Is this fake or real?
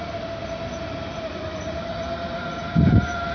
real